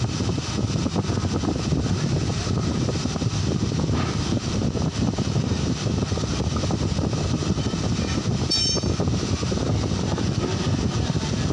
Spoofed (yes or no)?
yes